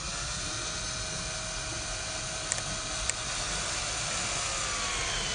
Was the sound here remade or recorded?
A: recorded